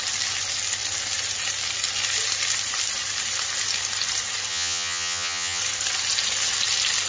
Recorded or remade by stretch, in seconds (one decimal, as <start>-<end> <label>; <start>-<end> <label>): 0.0-4.5 recorded; 4.5-5.6 remade; 5.6-7.1 recorded

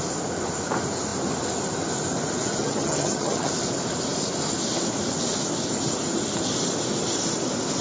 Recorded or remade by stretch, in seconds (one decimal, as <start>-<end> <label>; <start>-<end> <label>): 0.0-2.6 recorded; 2.6-3.5 remade; 3.5-7.8 recorded

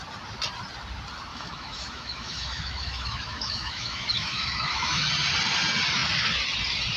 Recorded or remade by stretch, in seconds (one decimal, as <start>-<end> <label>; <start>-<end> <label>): 0.0-1.3 recorded; 1.3-5.1 remade; 5.1-7.0 recorded